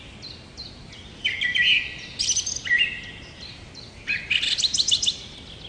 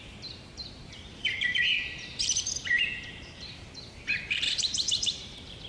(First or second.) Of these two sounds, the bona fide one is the first